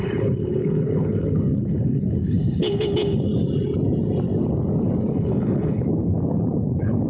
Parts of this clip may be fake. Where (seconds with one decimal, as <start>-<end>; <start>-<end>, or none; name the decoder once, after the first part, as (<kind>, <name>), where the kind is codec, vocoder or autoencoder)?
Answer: 0.0-3.3 (codec, HILCodec); 5.1-7.1